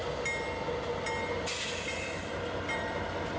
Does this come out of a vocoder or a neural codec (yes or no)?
no